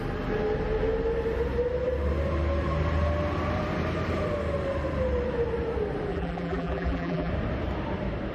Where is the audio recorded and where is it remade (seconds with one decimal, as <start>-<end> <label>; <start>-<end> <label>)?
0.0-6.1 recorded; 6.1-7.3 remade; 7.3-8.3 recorded